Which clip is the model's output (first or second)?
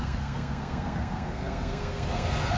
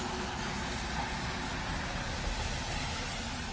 first